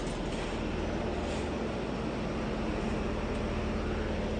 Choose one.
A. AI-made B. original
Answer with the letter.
B